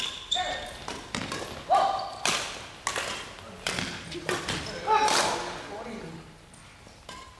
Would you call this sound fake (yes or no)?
no